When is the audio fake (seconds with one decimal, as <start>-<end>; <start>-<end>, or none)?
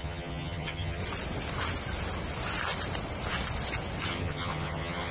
0.0-1.0; 4.1-5.1